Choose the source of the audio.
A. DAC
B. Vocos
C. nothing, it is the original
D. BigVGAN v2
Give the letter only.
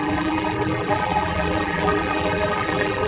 D